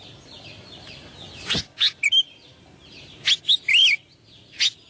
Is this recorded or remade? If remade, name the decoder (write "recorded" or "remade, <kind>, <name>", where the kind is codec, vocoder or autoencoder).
recorded